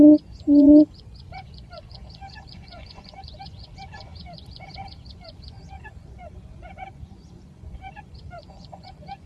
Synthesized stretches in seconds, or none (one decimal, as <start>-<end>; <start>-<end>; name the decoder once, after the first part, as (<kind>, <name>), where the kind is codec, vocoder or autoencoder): 0.0-9.3 (vocoder, Vocos)